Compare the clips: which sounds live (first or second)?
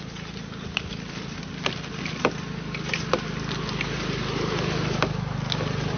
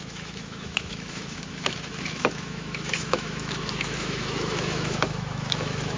first